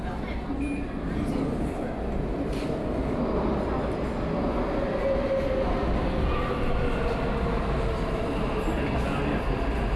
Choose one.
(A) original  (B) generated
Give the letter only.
A